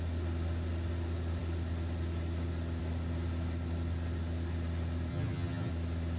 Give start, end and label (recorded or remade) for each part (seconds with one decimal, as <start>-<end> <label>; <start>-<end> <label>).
0.0-5.1 recorded; 5.1-5.7 remade; 5.7-6.2 recorded